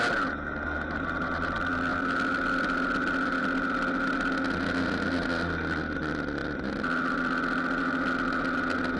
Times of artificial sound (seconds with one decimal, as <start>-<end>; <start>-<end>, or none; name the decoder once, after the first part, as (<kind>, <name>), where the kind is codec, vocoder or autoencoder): none